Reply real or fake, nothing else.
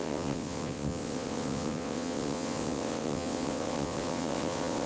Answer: fake